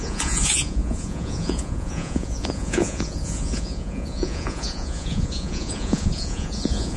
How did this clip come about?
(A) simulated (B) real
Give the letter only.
A